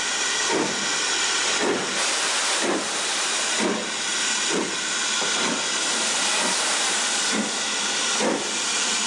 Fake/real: real